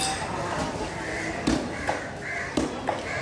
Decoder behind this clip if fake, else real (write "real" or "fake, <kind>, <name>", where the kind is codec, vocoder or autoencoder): real